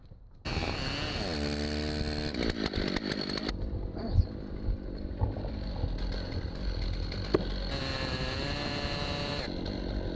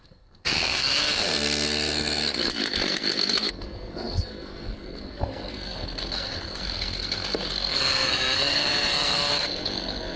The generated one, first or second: second